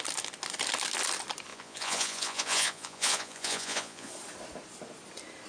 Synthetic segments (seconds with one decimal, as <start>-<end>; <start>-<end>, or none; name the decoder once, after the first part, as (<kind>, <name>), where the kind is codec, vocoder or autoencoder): 1.5-4.1 (vocoder, Vocos)